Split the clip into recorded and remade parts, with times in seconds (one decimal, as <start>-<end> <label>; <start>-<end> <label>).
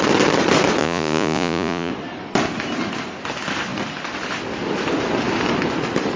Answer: 0.0-0.8 recorded; 0.8-1.9 remade; 1.9-6.2 recorded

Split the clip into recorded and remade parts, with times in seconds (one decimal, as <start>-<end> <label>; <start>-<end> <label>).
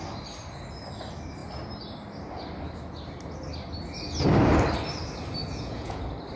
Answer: 0.0-5.4 recorded; 5.4-6.0 remade; 6.0-6.4 recorded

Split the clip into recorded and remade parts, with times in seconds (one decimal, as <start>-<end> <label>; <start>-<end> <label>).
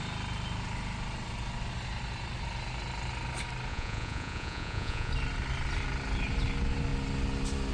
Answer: 0.0-3.7 recorded; 3.7-5.1 remade; 5.1-7.7 recorded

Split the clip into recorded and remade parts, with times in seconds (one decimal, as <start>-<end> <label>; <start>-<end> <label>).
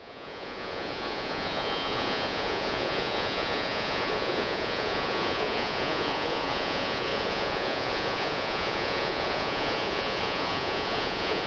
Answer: 0.0-11.5 remade